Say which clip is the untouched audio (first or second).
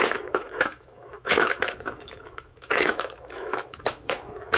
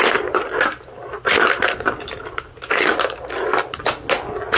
second